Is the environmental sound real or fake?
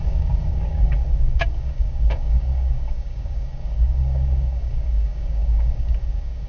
fake